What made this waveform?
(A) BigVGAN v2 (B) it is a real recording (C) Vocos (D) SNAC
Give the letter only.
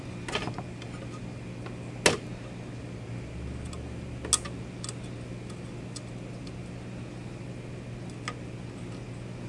B